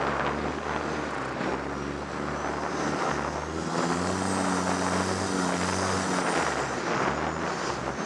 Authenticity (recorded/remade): recorded